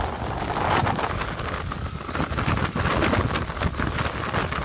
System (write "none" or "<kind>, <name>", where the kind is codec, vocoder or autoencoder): none